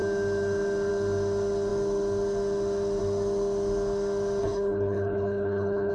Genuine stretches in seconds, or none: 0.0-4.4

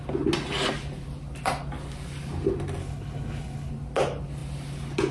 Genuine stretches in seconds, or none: 0.0-2.8; 3.7-5.1

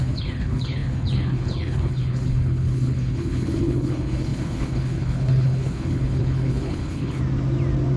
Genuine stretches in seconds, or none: 7.2-8.0